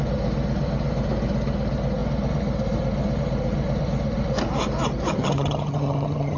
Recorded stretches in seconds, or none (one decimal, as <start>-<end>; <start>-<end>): 0.0-5.1